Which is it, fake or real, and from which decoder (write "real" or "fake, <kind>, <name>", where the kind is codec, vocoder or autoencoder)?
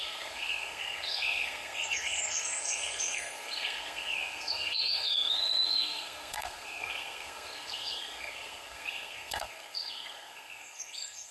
fake, codec, SNAC